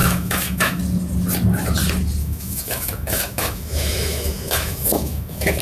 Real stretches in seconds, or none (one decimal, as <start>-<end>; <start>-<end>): 0.8-2.2